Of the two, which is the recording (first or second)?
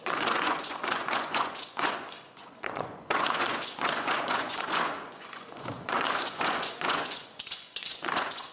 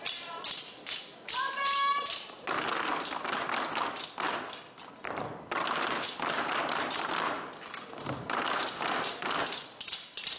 second